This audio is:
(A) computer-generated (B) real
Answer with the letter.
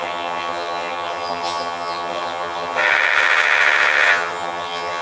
A